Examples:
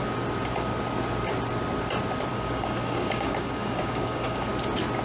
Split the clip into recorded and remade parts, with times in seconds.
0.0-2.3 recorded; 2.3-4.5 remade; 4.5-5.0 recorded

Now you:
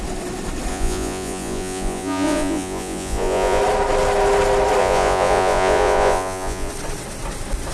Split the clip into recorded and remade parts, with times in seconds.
0.0-0.7 recorded; 0.7-3.6 remade; 3.6-4.8 recorded; 4.8-6.7 remade; 6.7-7.7 recorded

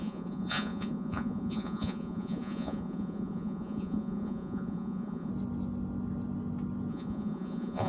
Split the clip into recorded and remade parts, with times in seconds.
0.0-5.3 remade; 5.3-6.9 recorded; 6.9-7.9 remade

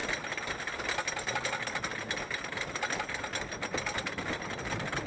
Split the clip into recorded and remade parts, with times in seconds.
0.0-5.1 recorded

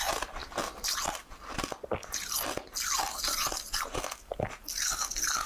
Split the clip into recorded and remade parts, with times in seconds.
0.0-5.5 recorded

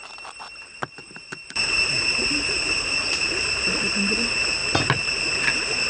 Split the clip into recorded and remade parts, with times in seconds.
0.0-4.6 remade; 4.6-5.5 recorded; 5.5-5.9 remade